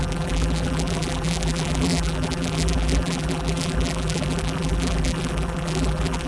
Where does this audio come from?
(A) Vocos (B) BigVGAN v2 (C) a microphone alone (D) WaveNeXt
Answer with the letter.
B